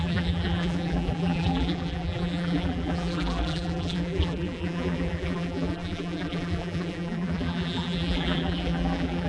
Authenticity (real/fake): fake